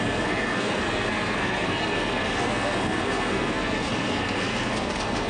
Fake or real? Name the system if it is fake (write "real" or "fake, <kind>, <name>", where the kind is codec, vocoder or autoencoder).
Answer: fake, codec, SNAC